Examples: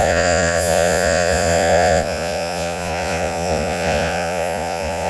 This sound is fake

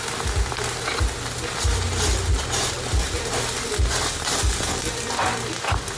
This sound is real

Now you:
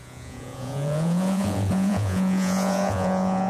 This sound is fake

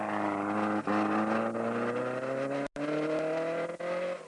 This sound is real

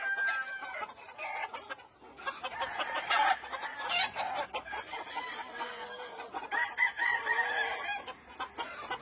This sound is real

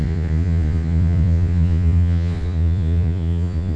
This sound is fake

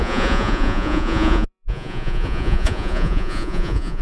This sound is fake